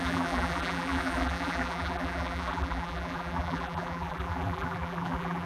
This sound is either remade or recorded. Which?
remade